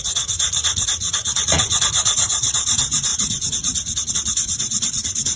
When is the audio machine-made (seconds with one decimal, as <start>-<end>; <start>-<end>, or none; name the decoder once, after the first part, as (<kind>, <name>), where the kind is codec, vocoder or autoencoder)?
0.0-5.4 (vocoder, Vocos)